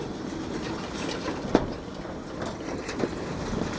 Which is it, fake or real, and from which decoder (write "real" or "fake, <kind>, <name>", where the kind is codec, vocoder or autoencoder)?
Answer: real